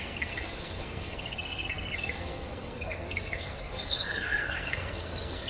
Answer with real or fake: fake